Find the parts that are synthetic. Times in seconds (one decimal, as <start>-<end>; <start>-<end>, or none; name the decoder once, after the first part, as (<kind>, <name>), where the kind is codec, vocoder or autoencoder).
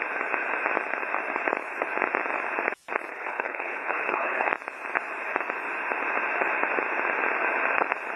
3.1-4.5 (codec, HILCodec)